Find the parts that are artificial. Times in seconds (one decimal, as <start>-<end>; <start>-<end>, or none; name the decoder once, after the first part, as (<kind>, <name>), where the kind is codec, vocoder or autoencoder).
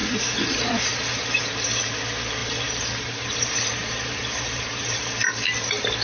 0.0-1.4 (vocoder, BigVGAN v2); 2.4-5.1